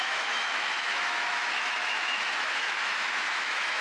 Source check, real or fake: fake